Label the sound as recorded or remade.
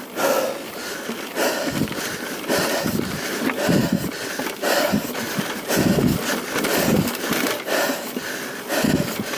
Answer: recorded